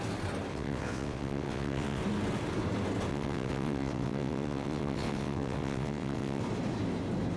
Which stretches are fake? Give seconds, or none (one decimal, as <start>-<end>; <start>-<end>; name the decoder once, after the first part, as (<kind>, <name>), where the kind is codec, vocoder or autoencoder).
0.5-2.0 (vocoder, WaveNeXt); 3.1-6.4